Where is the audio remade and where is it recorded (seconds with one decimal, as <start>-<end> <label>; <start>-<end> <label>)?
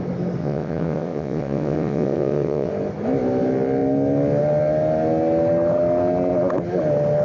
0.0-0.4 recorded; 0.4-2.7 remade; 2.7-7.2 recorded